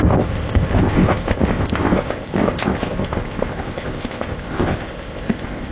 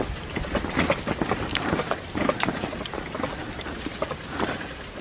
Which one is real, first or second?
second